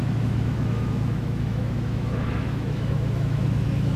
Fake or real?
fake